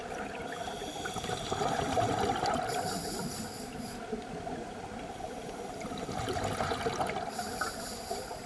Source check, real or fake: real